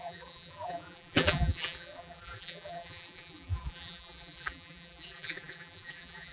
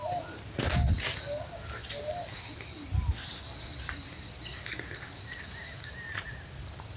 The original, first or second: second